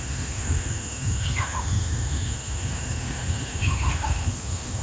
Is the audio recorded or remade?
remade